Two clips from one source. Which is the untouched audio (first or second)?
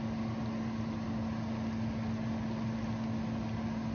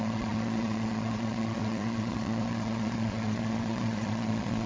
first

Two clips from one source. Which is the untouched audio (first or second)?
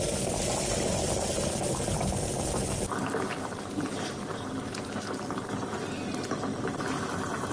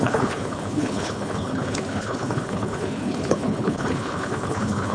first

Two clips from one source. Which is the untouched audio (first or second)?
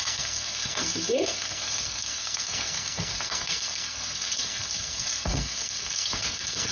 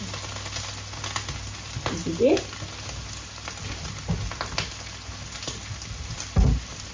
second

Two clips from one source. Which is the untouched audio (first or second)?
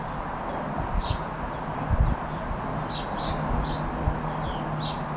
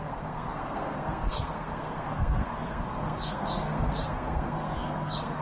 first